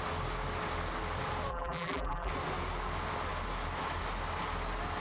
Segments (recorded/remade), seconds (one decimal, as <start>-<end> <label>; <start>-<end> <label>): 0.0-1.5 recorded; 1.5-2.3 remade; 2.3-5.0 recorded